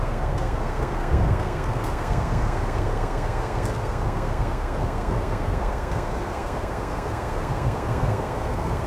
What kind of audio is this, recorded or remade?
remade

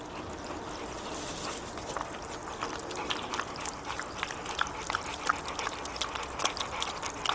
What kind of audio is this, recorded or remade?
recorded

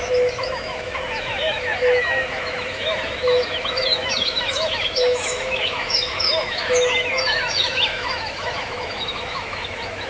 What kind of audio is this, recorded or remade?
remade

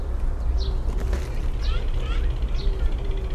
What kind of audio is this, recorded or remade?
recorded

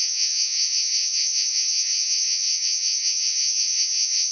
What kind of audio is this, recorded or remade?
remade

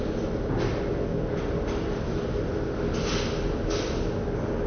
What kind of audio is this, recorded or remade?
recorded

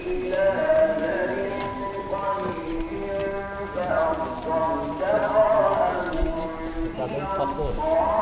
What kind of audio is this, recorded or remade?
recorded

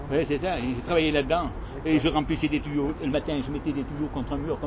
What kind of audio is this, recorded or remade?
recorded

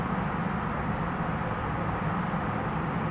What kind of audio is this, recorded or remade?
remade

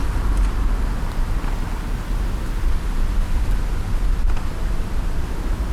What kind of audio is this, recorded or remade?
recorded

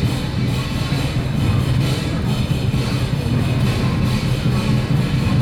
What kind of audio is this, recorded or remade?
remade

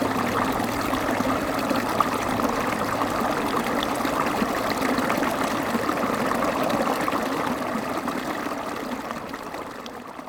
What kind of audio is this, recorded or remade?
recorded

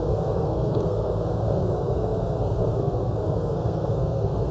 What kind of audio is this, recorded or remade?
remade